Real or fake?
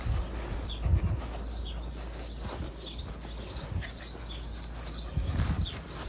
real